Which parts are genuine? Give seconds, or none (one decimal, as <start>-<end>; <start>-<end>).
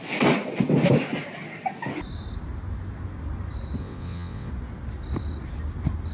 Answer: 0.0-3.8; 4.5-6.1